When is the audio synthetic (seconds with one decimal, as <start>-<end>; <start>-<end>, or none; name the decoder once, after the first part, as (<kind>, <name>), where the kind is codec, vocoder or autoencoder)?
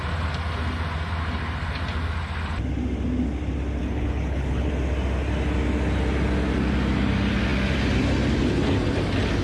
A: 3.8-4.7 (codec, HILCodec)